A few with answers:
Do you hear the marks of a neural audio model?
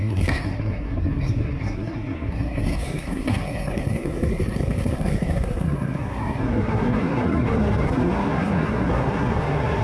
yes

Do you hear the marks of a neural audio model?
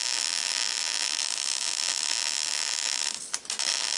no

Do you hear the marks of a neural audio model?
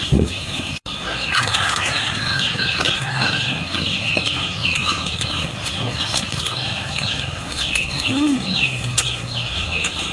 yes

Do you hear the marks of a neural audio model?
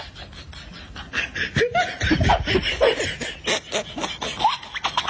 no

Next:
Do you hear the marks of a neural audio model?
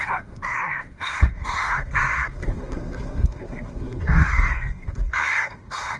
yes